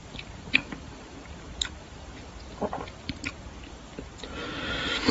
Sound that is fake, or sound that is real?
fake